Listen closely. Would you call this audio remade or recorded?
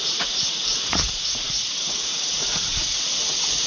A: remade